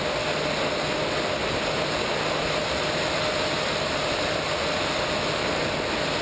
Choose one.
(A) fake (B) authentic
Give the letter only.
B